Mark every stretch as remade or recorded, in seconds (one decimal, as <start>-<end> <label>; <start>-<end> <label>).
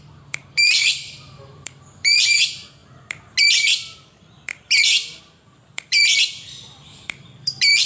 0.0-2.8 remade; 2.8-3.4 recorded; 3.4-7.9 remade